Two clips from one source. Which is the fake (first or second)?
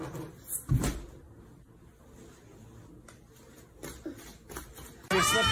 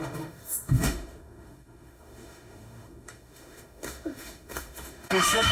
second